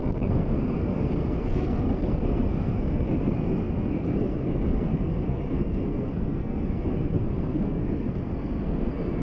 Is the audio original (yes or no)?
no